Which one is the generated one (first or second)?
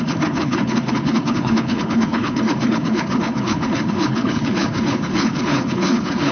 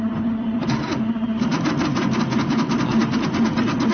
first